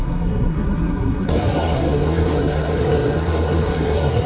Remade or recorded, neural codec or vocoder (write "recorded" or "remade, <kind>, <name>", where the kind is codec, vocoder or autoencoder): remade, codec, SNAC